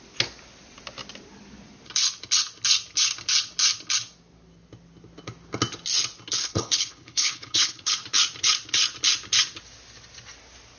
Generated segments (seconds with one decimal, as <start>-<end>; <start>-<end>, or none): 6.4-7.9